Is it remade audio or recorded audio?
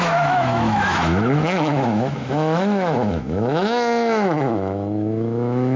remade